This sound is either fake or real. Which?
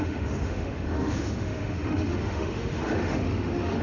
fake